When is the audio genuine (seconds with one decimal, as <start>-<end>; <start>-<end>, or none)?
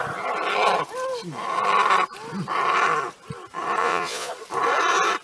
0.0-3.8; 4.3-5.2